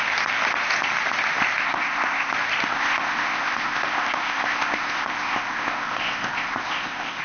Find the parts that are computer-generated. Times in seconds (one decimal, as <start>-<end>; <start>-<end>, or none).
1.6-2.3; 2.7-7.2